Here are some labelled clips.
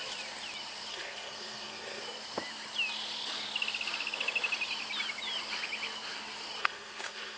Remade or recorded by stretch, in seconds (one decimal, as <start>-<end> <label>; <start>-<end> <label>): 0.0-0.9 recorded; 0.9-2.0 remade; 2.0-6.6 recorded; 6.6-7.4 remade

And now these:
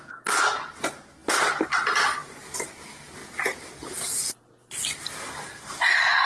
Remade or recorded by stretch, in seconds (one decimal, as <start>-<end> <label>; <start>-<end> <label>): 0.0-6.3 recorded

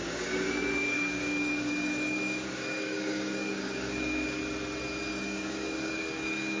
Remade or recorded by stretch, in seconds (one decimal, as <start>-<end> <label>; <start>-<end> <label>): 0.0-4.4 remade; 4.4-5.1 recorded; 5.1-6.6 remade

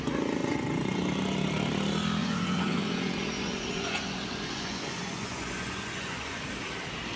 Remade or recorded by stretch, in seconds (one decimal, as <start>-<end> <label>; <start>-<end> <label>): 0.0-0.4 recorded; 0.4-1.0 remade; 1.0-2.2 recorded; 2.2-6.4 remade; 6.4-7.2 recorded